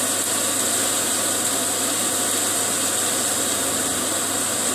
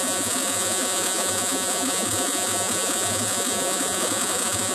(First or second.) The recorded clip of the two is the first